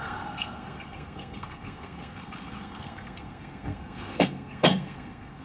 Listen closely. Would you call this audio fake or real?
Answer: fake